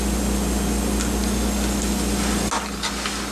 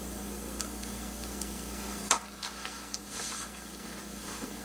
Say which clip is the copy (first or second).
second